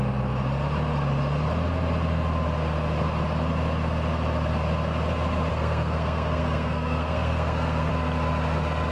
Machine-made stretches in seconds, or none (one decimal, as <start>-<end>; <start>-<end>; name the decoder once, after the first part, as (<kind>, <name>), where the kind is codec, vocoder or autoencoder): 5.5-7.9 (codec, SNAC)